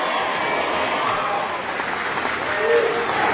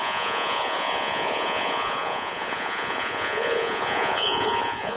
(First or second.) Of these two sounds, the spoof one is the second